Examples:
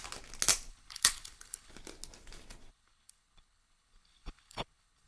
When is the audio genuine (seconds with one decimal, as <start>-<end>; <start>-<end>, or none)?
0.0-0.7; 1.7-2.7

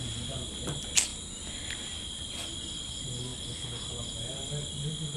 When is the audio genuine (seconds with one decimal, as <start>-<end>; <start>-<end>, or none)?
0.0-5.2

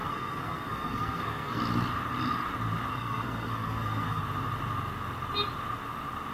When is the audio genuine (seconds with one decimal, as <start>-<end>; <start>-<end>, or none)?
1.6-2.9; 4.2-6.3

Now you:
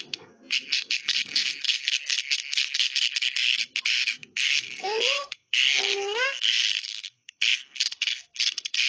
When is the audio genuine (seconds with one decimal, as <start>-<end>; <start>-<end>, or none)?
none

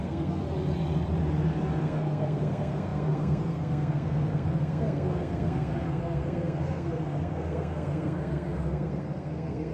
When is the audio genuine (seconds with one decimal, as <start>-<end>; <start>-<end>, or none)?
0.4-1.8

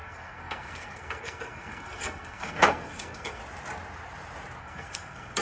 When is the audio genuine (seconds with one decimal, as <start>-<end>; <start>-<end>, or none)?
3.4-4.6

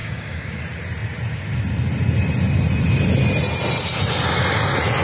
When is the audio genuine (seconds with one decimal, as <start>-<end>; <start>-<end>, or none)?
0.6-5.0